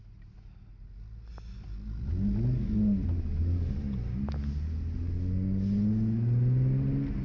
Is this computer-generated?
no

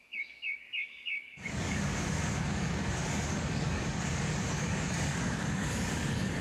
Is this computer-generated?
yes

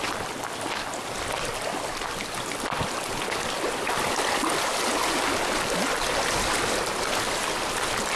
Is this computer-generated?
no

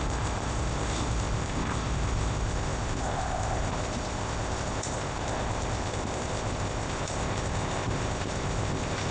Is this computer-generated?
yes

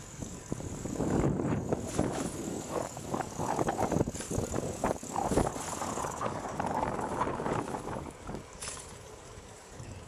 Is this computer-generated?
yes